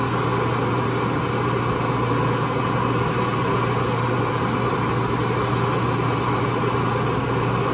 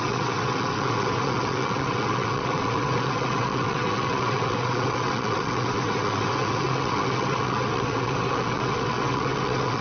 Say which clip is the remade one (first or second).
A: second